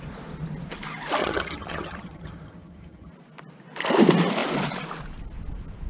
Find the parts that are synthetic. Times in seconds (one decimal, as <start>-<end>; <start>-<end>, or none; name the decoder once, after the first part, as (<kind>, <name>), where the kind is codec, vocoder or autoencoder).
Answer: 1.2-3.1 (vocoder, HiFi-GAN)